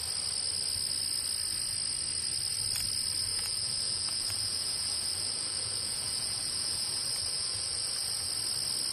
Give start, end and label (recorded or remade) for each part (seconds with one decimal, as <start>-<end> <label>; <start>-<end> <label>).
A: 0.0-3.3 recorded; 3.3-8.3 remade; 8.3-8.9 recorded